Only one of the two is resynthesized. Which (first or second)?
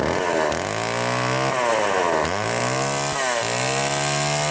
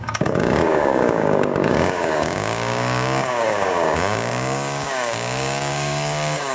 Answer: second